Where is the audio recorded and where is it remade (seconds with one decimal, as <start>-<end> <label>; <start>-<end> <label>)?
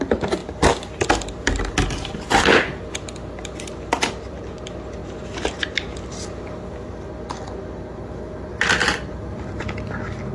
0.0-8.5 recorded; 8.5-9.6 remade; 9.6-10.3 recorded